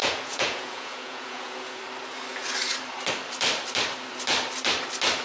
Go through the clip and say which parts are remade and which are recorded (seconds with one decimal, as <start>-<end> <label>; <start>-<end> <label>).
0.0-1.8 remade; 1.8-5.2 recorded